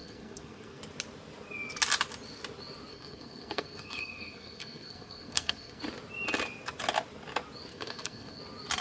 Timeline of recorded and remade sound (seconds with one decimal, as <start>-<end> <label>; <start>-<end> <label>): 0.0-0.8 remade; 0.8-2.9 recorded; 2.9-5.8 remade; 5.8-7.7 recorded; 7.7-8.4 remade; 8.4-8.8 recorded